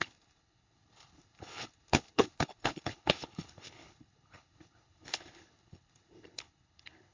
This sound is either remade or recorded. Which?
remade